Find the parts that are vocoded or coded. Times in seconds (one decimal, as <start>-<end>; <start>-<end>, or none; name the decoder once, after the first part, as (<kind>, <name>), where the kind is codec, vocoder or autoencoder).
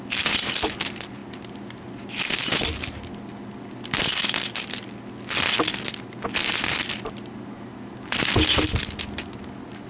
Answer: none